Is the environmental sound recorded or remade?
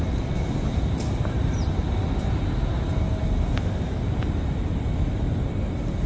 recorded